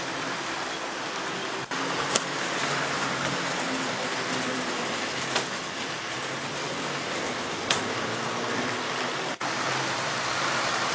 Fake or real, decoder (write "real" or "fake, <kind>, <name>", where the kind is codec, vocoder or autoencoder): real